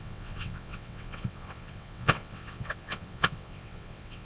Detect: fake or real fake